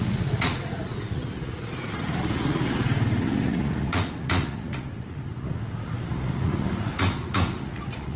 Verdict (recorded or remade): remade